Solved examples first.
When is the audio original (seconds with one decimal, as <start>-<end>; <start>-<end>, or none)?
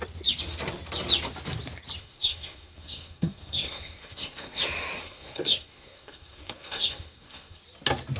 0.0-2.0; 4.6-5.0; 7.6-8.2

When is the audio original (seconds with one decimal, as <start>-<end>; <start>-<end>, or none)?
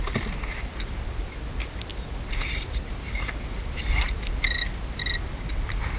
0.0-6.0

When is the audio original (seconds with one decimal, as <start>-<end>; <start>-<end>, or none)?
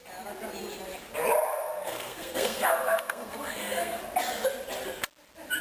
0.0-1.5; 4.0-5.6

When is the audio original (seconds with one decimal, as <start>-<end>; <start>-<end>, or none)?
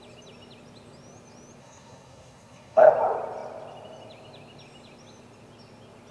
0.0-1.6; 2.9-6.1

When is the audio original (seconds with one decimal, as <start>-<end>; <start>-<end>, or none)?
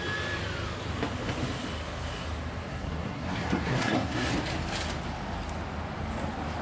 0.0-2.7; 4.3-6.6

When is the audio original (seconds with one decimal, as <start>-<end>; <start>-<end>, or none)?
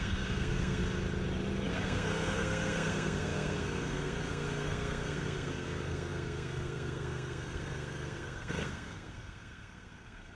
0.8-1.7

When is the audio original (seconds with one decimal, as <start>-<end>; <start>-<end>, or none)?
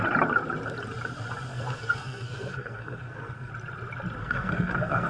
0.0-1.5; 3.5-4.2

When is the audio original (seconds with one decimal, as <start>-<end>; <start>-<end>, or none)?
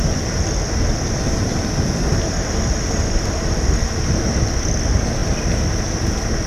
0.0-6.5